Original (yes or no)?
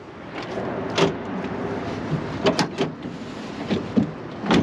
yes